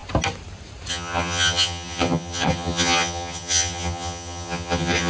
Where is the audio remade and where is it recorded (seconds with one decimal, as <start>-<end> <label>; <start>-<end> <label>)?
0.0-0.9 recorded; 0.9-5.1 remade